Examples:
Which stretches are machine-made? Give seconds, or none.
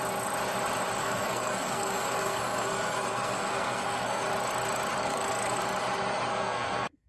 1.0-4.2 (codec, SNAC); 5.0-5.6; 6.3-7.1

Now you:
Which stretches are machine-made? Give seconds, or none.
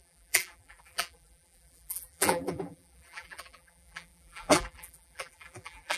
0.0-6.0 (vocoder, BigVGAN v2)